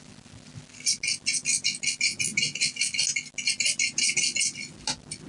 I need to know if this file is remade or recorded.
recorded